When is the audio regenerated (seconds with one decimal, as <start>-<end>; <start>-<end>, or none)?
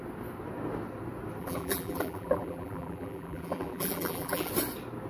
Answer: 1.4-4.5